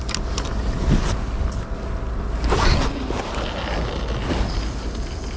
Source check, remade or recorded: recorded